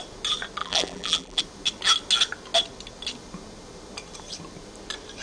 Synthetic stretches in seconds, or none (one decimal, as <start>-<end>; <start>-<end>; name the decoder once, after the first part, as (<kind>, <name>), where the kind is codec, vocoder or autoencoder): 0.6-1.4 (vocoder, BigVGAN v2)